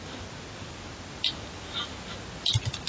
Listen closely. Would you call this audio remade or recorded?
recorded